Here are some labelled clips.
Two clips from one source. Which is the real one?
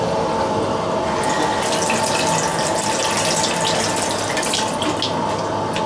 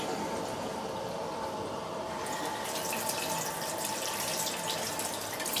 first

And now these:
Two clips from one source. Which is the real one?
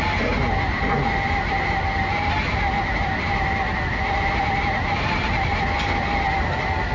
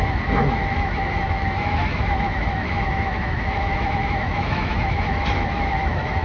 first